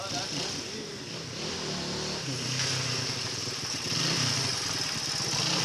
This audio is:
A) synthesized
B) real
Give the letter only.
B